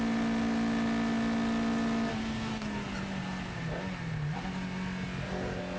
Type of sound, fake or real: real